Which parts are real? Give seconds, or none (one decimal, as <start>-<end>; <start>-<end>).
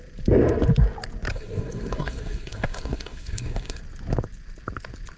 0.0-1.3; 3.8-5.2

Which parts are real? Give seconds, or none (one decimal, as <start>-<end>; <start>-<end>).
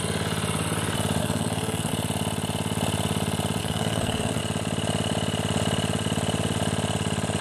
0.0-1.2; 1.9-3.6; 4.4-7.4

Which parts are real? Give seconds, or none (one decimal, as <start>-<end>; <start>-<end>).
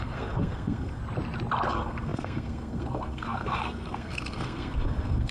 1.0-1.7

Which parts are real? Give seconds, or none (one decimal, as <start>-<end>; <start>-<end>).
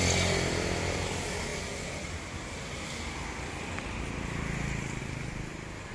0.0-5.9